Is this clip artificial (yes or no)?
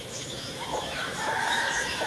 yes